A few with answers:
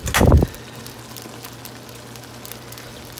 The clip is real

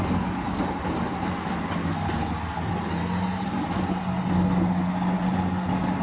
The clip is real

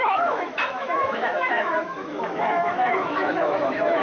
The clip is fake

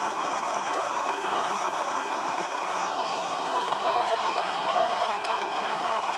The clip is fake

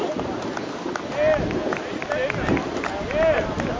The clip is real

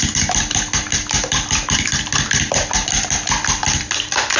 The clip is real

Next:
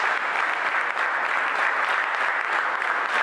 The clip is real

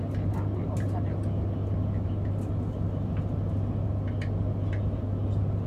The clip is real